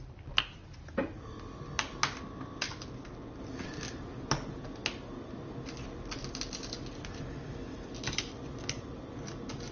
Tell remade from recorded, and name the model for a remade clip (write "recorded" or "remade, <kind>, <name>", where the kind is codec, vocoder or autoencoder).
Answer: recorded